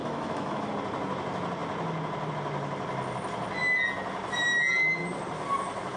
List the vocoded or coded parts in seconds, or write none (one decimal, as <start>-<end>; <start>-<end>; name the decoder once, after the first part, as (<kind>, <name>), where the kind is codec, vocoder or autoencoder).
0.0-0.7 (autoencoder, DAC-VAE)